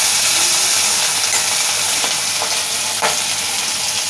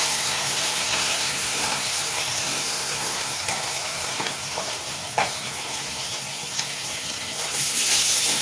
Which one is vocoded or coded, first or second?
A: second